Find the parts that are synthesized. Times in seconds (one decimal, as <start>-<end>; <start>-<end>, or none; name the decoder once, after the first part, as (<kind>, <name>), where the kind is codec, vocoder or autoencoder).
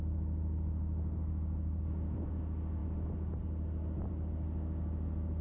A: none